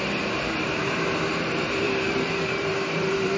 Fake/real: fake